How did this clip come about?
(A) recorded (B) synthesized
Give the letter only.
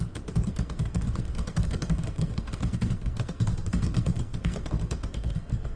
B